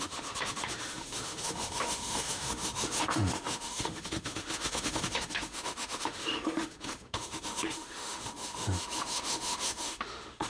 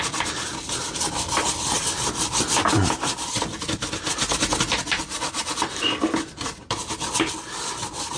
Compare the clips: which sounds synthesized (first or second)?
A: first